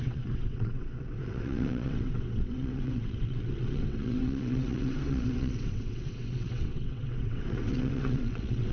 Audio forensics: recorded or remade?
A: remade